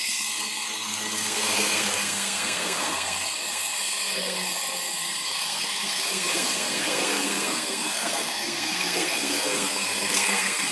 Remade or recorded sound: remade